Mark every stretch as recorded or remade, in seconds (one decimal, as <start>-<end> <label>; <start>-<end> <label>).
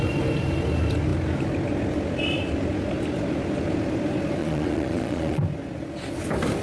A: 0.0-4.4 recorded; 4.4-5.4 remade; 5.4-6.6 recorded